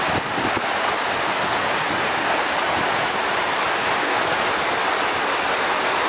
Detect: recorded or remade recorded